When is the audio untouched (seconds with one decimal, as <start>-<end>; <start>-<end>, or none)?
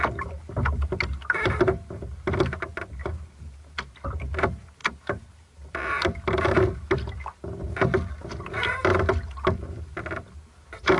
0.0-4.8; 5.9-11.0